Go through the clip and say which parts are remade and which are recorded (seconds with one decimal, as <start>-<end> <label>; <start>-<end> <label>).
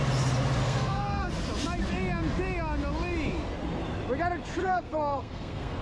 0.0-0.6 recorded; 0.6-1.3 remade; 1.3-4.6 recorded; 4.6-5.8 remade